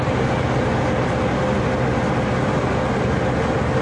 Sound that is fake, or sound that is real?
real